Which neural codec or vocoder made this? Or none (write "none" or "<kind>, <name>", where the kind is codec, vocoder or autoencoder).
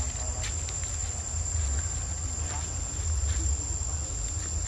none